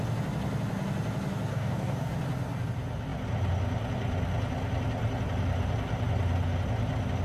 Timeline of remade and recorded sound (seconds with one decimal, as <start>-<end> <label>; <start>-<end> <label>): 0.0-1.5 recorded; 1.5-2.1 remade; 2.1-7.2 recorded